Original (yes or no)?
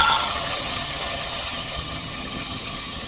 no